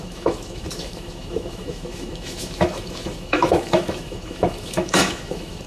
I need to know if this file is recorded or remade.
remade